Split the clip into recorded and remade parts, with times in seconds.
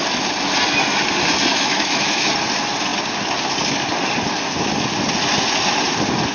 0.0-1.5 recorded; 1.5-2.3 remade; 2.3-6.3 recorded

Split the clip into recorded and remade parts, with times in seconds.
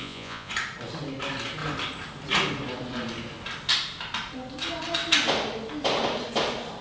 0.0-0.5 remade; 0.5-6.8 recorded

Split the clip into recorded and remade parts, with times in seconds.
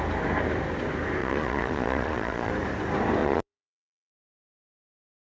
0.0-1.2 recorded; 1.2-2.5 remade; 2.5-3.2 recorded; 3.2-4.1 remade; 4.1-5.4 recorded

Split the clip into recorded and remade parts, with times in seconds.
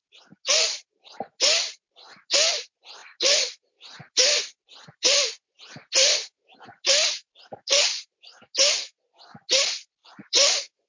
0.0-10.0 recorded; 10.0-10.9 remade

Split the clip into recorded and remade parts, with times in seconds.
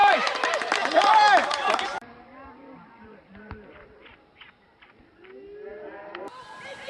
0.0-0.7 remade; 0.7-1.4 recorded; 1.4-5.3 remade; 5.3-6.9 recorded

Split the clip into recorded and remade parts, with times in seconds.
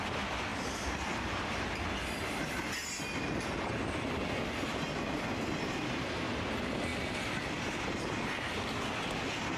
0.0-9.6 recorded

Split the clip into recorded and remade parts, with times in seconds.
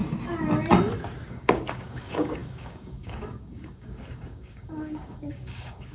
0.0-1.3 recorded; 1.3-5.9 remade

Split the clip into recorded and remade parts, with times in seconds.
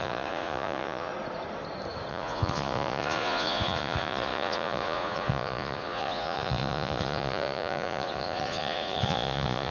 0.0-1.1 remade; 1.1-2.1 recorded; 2.1-9.7 remade